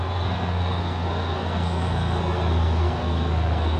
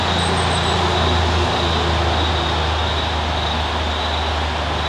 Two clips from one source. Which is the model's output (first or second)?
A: first